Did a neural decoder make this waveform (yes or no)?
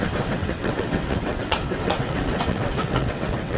yes